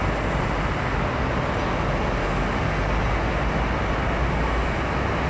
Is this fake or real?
real